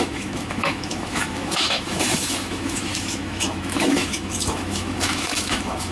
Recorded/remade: remade